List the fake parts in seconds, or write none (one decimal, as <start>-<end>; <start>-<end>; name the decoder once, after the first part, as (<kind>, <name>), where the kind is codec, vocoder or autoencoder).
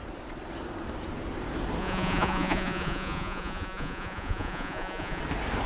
1.8-5.2 (vocoder, Vocos)